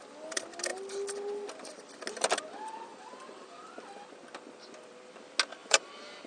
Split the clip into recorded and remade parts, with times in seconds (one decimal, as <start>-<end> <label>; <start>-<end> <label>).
0.0-2.9 recorded; 2.9-3.7 remade; 3.7-5.6 recorded; 5.6-6.3 remade

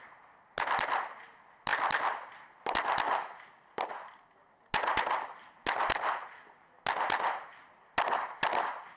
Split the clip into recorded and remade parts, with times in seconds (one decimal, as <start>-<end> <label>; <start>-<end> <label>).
0.0-9.0 recorded

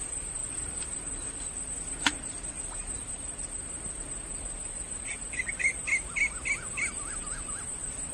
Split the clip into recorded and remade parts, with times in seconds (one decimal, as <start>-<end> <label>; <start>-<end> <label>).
0.0-8.1 recorded

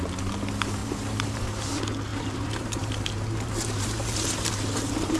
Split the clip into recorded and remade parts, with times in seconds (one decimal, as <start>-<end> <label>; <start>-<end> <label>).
0.0-0.8 recorded; 0.8-1.4 remade; 1.4-2.1 recorded; 2.1-5.2 remade